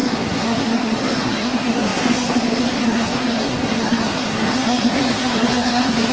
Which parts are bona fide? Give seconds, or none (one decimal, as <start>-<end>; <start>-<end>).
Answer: none